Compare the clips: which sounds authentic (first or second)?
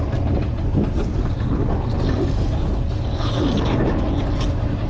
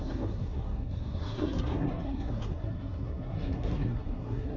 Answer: first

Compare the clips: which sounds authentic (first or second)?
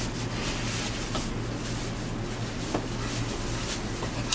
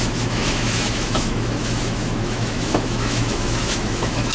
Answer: first